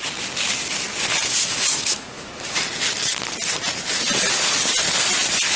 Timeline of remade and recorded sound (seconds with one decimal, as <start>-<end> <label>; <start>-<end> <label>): 0.0-1.7 recorded; 1.7-2.6 remade; 2.6-5.6 recorded